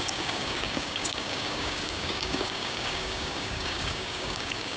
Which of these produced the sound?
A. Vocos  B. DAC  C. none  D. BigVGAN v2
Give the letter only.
B